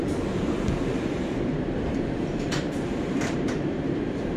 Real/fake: fake